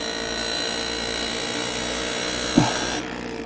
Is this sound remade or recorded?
recorded